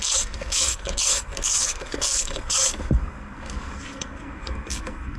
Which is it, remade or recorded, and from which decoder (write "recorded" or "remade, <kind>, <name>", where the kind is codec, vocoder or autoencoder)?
remade, codec, SNAC